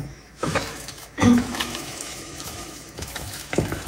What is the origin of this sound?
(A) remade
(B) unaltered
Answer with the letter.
A